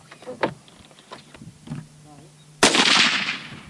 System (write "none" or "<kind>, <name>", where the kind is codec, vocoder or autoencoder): none